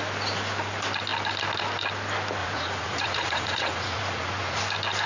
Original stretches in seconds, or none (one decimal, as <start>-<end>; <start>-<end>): 0.0-2.4; 4.6-5.1